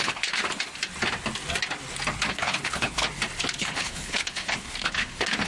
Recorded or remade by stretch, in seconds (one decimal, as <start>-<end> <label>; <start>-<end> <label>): 0.0-0.4 remade; 0.4-2.3 recorded; 2.3-3.0 remade; 3.0-3.6 recorded; 3.6-5.5 remade